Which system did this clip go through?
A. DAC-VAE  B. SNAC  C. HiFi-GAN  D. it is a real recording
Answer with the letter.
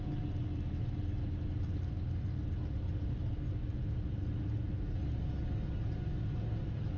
D